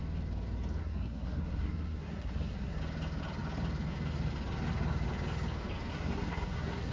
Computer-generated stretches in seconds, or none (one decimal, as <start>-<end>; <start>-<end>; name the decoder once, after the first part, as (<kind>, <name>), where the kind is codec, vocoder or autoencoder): 0.8-2.8 (codec, SNAC); 5.9-6.9